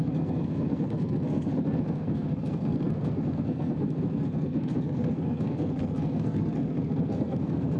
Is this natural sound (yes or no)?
no